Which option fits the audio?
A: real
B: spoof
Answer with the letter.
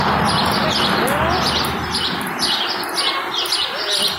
A